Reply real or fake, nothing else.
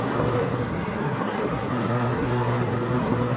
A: fake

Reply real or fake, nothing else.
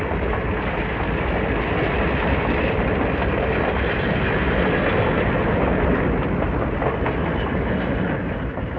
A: real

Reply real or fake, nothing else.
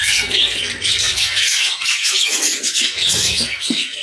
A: fake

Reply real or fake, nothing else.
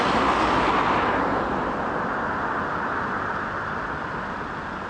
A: real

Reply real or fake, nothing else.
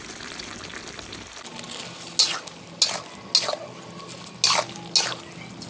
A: real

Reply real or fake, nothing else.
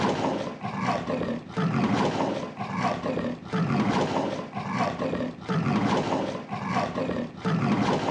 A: fake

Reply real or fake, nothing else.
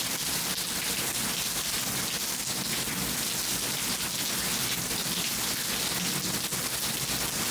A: real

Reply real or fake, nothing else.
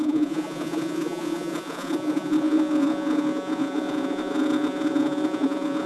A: fake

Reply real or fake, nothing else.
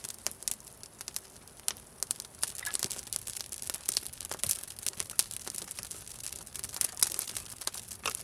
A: real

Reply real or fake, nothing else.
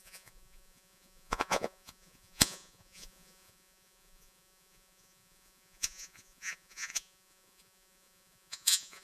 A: fake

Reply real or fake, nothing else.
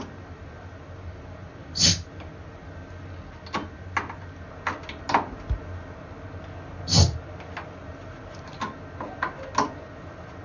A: real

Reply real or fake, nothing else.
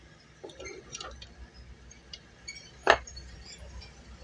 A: fake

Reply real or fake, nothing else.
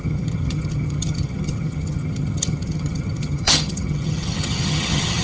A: fake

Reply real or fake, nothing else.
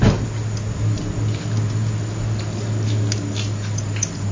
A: real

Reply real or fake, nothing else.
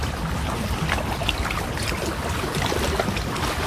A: real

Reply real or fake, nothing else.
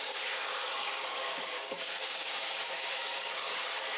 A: fake